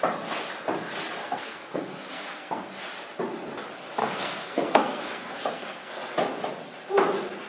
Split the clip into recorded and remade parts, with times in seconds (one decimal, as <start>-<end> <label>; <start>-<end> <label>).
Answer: 0.0-1.2 recorded; 1.2-2.7 remade; 2.7-4.0 recorded; 4.0-5.9 remade; 5.9-7.5 recorded

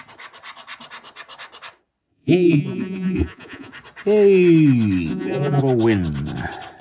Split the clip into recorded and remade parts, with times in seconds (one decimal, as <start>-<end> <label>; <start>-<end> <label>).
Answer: 0.0-2.1 recorded; 2.1-3.7 remade; 3.7-5.1 recorded; 5.1-5.6 remade; 5.6-6.8 recorded

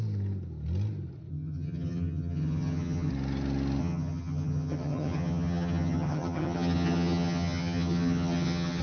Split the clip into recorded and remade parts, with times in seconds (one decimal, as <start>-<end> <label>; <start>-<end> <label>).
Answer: 0.0-1.3 recorded; 1.3-3.1 remade; 3.1-3.8 recorded; 3.8-8.8 remade